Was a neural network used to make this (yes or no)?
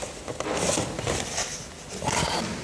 no